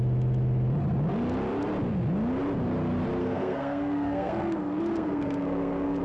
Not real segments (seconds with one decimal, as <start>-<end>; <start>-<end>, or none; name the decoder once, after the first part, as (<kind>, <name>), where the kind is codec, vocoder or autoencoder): 3.2-6.0 (codec, SNAC)